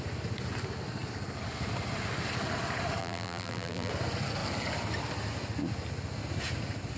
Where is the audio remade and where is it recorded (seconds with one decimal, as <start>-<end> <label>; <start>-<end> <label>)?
0.0-3.0 recorded; 3.0-3.9 remade; 3.9-7.0 recorded